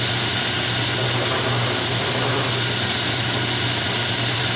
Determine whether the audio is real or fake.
real